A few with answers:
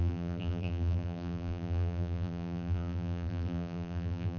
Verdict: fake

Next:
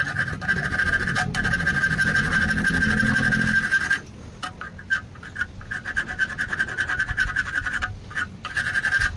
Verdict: real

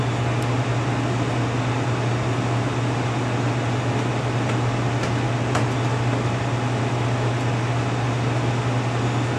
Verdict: real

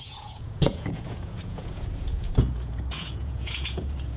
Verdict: fake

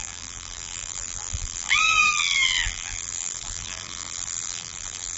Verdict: fake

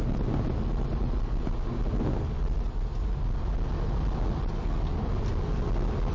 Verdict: real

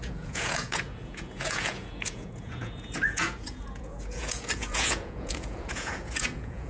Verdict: fake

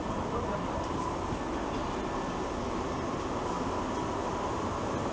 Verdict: real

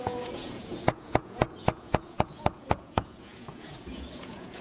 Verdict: fake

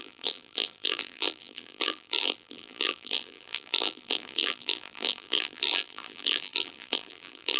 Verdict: fake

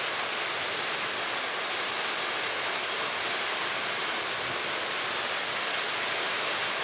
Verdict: real